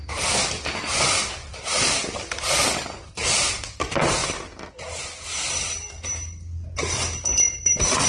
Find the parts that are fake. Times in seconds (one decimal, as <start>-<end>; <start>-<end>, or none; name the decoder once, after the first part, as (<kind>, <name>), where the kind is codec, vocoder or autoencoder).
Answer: 0.0-1.4 (vocoder, BigVGAN v2); 3.1-8.1